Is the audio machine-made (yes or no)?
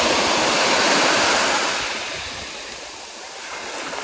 no